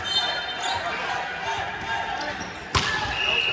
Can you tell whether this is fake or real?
real